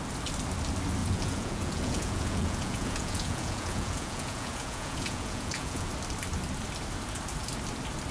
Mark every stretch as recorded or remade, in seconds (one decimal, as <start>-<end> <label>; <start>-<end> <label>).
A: 0.0-1.0 recorded; 1.0-5.9 remade; 5.9-8.1 recorded